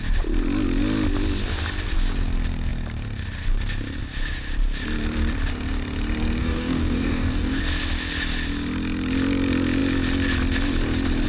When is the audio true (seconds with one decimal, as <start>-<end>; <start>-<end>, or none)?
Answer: 0.0-6.4; 7.6-11.3